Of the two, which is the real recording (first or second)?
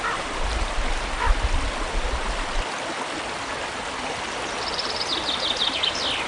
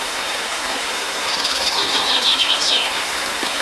first